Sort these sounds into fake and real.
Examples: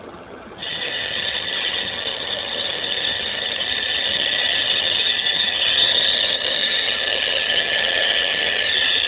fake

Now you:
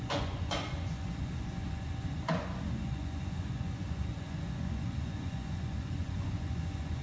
fake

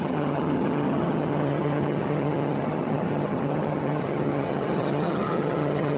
fake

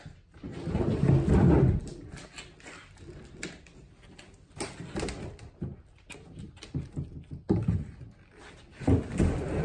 real